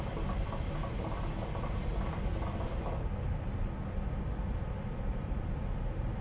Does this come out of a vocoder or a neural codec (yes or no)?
no